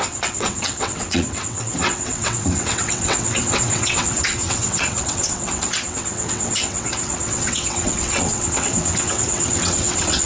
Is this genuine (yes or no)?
no